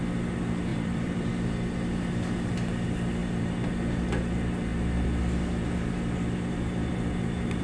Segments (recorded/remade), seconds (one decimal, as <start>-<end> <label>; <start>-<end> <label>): 0.0-0.7 recorded; 0.7-1.3 remade; 1.3-3.2 recorded; 3.2-3.7 remade; 3.7-7.6 recorded